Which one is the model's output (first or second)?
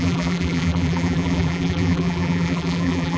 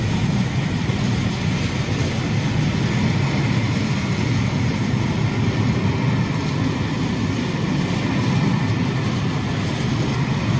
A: first